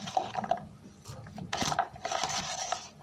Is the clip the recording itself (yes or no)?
yes